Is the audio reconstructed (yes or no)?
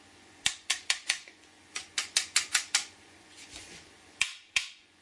yes